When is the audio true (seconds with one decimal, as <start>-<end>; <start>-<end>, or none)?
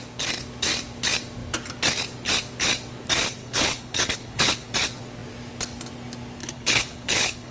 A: 0.0-3.4; 4.7-6.4